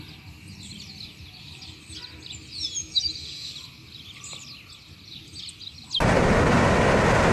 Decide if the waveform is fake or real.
real